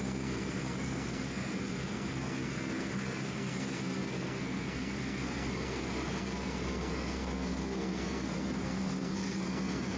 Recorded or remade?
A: remade